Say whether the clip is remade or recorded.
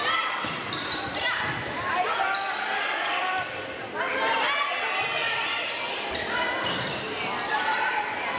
recorded